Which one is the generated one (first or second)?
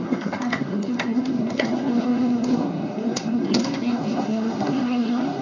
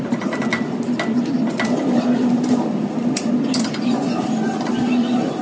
first